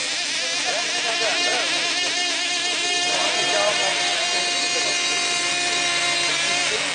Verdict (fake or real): real